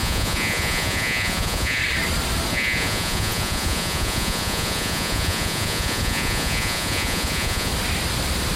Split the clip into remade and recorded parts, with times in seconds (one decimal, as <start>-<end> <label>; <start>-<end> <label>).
0.0-1.8 remade; 1.8-2.5 recorded; 2.5-7.7 remade; 7.7-8.6 recorded